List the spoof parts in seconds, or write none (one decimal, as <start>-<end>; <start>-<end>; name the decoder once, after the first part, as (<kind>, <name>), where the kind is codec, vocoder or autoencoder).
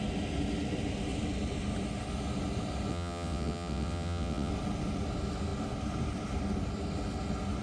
2.9-4.5 (vocoder, WaveNeXt)